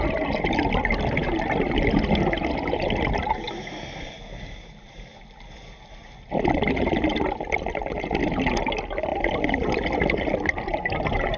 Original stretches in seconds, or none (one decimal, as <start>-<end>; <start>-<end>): 0.0-11.4